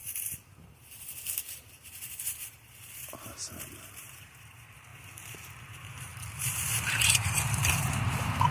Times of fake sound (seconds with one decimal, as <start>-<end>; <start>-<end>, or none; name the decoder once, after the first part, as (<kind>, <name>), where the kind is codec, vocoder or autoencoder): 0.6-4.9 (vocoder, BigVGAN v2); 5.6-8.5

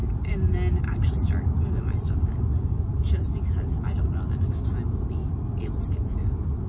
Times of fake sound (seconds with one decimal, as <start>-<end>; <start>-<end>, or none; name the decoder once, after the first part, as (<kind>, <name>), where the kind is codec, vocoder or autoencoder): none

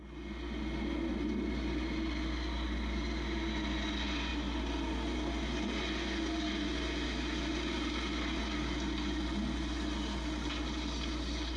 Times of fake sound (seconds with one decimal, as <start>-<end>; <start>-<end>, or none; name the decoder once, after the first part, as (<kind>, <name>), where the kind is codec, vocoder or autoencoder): none

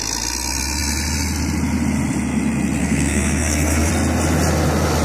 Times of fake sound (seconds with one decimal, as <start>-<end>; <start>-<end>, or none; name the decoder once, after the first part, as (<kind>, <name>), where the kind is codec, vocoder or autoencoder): 2.8-3.9 (codec, SNAC)